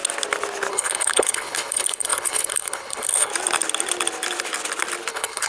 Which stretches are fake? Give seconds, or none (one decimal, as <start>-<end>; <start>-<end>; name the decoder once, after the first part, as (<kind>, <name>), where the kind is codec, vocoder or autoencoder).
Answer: 0.7-3.3 (codec, HILCodec); 5.1-5.5

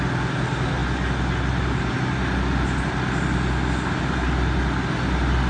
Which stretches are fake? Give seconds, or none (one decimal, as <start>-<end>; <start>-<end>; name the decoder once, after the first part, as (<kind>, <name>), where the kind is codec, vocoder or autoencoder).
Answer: none

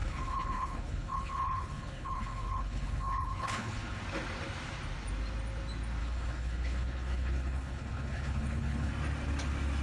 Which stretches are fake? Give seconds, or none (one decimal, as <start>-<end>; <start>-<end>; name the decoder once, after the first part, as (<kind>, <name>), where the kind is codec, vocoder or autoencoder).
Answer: 0.0-4.0 (codec, HILCodec); 6.0-8.9

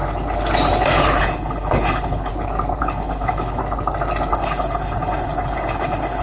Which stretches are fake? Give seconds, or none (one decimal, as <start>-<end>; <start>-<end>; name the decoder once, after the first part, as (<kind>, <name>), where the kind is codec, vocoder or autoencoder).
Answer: 1.2-2.3 (codec, HILCodec); 2.8-3.6; 4.3-6.2

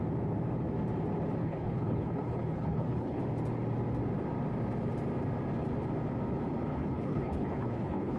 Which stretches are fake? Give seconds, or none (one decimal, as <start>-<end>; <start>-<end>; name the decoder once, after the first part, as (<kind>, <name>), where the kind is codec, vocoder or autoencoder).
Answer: 1.4-3.2 (codec, HILCodec); 6.7-8.2